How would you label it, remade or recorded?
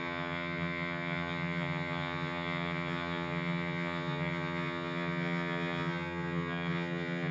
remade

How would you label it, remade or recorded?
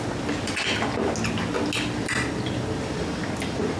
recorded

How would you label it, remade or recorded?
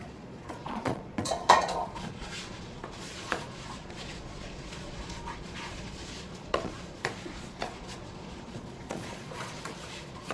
remade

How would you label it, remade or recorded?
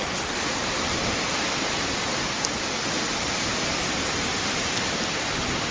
recorded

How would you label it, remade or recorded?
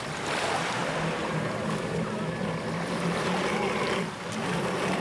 remade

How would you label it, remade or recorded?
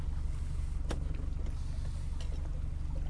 recorded